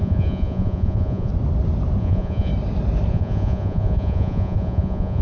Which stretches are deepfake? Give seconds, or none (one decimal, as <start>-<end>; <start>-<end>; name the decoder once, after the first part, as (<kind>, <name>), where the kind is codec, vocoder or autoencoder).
0.0-1.3 (vocoder, Vocos); 2.0-2.5; 3.1-5.2